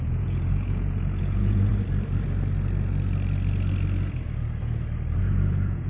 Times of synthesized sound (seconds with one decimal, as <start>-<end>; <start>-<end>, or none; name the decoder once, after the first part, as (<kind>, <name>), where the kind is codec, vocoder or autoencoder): 0.0-1.7 (vocoder, Vocos); 5.2-5.9